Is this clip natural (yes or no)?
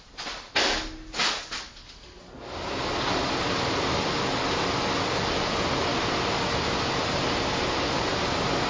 yes